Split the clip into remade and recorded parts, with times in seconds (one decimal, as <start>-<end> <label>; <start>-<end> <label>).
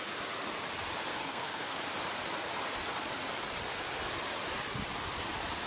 0.0-1.1 recorded; 1.1-1.8 remade; 1.8-5.7 recorded